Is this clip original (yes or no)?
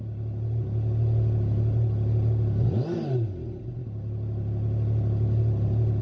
yes